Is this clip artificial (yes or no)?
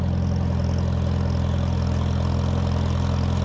no